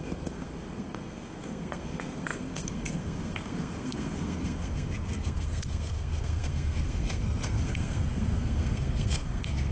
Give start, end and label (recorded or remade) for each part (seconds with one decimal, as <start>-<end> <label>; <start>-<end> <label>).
0.0-9.7 remade